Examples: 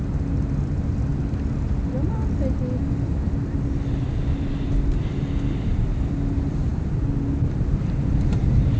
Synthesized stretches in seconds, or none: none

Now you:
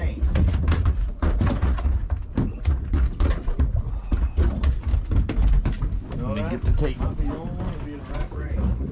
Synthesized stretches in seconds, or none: 0.0-2.0 (vocoder, Vocos); 2.5-4.9; 8.1-8.9

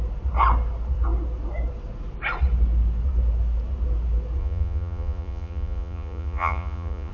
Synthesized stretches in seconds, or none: 4.4-7.1 (vocoder, Vocos)

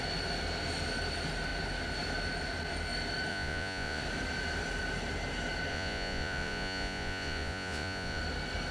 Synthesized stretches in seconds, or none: 3.3-4.0 (vocoder, Vocos); 5.7-8.2